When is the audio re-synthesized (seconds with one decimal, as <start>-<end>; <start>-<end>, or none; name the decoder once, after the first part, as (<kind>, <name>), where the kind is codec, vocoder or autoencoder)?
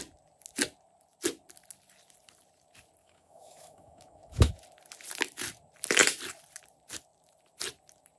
3.0-4.5 (autoencoder, DAC-VAE)